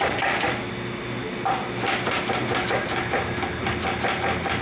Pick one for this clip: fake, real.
real